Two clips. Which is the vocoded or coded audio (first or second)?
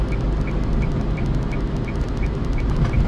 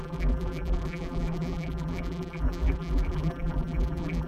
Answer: second